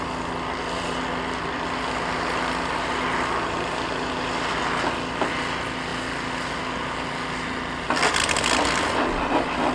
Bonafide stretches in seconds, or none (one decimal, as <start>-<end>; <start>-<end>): 0.0-9.7